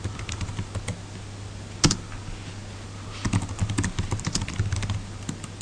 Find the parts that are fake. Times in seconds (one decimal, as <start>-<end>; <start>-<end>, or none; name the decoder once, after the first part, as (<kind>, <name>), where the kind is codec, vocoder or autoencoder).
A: none